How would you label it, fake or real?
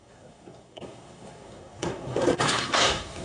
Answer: fake